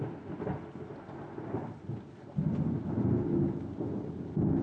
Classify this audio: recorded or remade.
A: recorded